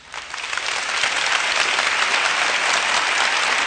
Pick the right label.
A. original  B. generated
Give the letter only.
A